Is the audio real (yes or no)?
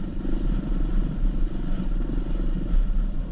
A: yes